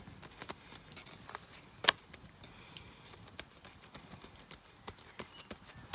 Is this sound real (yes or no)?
yes